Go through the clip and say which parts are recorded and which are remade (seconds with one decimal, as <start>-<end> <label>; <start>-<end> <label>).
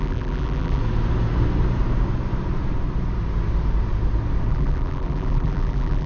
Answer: 0.0-0.8 remade; 0.8-4.5 recorded; 4.5-6.1 remade